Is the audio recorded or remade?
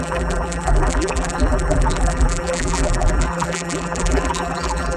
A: remade